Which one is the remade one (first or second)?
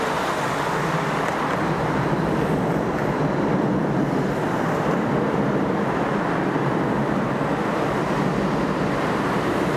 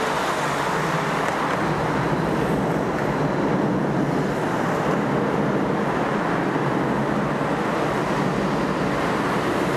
first